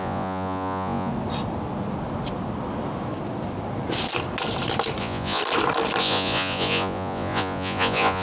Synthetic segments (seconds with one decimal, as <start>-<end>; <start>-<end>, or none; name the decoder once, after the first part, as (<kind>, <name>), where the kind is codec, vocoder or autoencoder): 0.0-1.1 (vocoder, Vocos); 5.0-5.4; 6.0-8.2